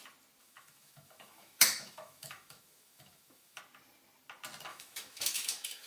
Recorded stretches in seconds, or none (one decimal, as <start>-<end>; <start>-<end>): 0.0-0.4; 3.6-4.7